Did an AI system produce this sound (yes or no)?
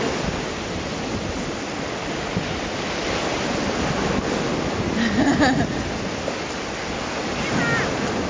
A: no